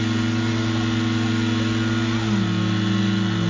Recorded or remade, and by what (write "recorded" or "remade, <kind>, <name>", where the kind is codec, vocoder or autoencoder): recorded